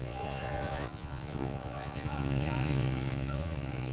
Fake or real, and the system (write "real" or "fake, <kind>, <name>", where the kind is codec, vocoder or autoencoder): fake, vocoder, Vocos